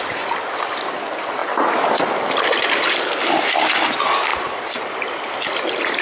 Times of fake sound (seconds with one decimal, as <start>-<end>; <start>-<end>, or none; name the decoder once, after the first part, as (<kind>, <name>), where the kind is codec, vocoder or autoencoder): none